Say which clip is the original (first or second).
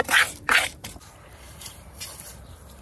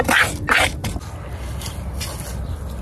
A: second